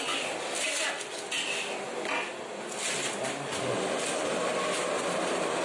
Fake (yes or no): no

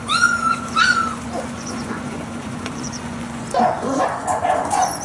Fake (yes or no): yes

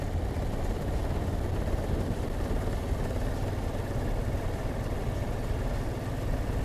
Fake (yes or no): no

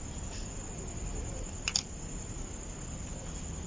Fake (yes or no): no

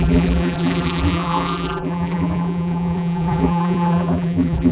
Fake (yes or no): yes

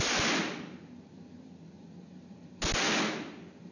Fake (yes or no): no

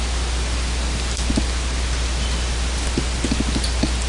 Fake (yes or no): no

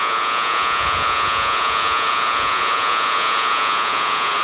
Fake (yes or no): yes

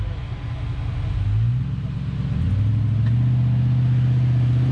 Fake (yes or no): no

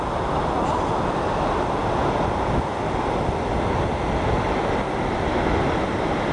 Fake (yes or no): no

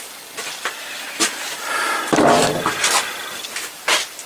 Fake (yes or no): yes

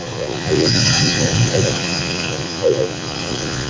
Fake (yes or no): yes